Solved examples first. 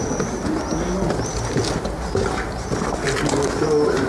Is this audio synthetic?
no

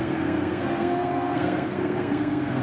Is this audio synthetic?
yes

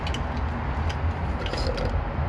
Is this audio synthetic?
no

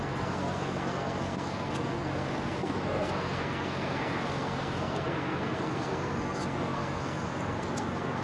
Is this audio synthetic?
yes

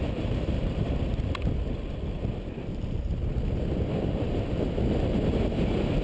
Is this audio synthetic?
no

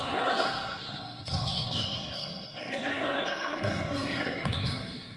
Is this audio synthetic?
yes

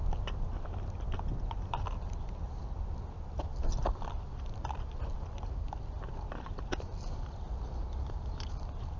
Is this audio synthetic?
no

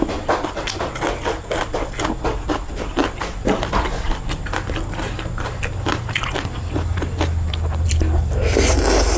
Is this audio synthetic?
no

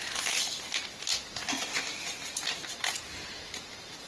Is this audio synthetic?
no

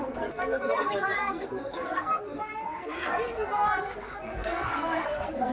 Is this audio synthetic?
yes